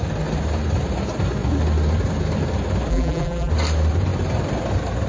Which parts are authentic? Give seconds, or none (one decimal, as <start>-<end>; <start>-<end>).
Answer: 0.0-2.9; 3.5-5.1